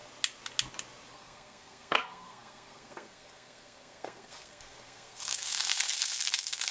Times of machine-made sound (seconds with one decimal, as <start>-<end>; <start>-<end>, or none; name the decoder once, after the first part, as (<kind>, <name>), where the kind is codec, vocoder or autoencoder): 1.1-6.7 (codec, SNAC)

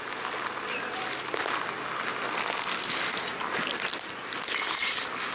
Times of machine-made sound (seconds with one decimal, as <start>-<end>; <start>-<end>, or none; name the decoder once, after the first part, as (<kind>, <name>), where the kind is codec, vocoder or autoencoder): none

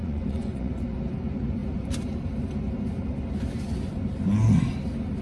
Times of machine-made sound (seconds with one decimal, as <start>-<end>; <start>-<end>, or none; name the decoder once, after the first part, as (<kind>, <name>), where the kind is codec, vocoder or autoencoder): 0.0-0.7 (vocoder, Vocos)